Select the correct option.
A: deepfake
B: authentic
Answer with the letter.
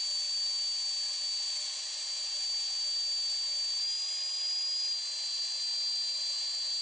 B